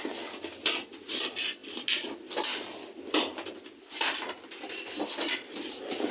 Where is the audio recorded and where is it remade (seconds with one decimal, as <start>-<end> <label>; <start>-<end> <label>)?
0.0-6.1 recorded